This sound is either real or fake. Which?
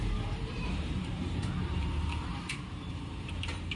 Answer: fake